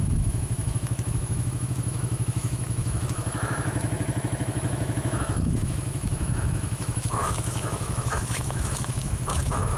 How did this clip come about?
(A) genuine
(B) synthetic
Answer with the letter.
B